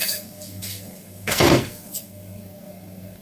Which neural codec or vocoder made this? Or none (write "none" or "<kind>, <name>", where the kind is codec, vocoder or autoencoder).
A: codec, SNAC